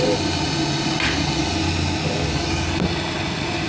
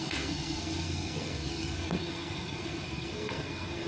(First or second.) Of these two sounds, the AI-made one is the second